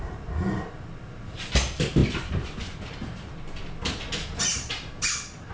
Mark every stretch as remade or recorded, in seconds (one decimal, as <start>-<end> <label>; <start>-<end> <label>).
0.0-5.5 recorded